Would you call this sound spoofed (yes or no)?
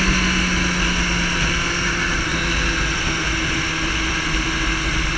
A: no